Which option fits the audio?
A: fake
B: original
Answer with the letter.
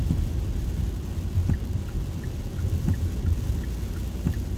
B